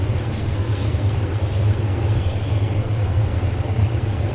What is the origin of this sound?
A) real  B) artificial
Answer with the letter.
B